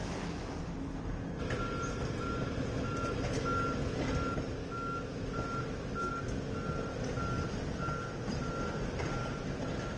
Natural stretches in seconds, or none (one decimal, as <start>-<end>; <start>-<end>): 0.6-4.6; 6.1-10.0